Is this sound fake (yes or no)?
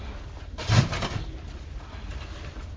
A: no